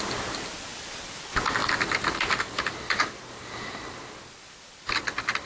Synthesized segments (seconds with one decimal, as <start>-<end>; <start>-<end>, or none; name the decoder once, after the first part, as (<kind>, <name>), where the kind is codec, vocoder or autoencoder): 0.7-1.2 (vocoder, BigVGAN v2); 1.6-4.9